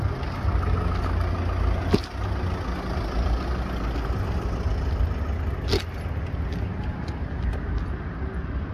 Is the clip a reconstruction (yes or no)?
no